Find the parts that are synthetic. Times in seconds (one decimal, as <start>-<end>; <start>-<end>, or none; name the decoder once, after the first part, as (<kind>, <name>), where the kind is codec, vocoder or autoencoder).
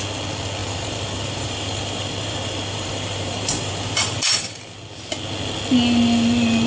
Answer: 0.6-4.6 (vocoder, BigVGAN v2)